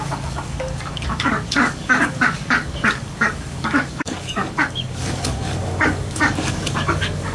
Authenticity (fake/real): fake